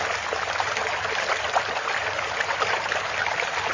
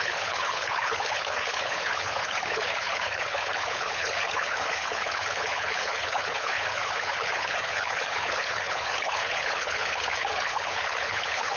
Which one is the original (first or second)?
first